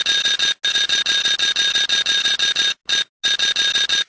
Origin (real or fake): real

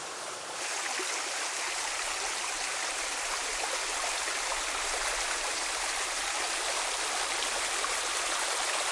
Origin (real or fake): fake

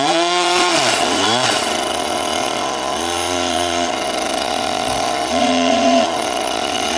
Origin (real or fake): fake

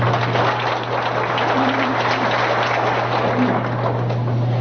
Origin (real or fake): real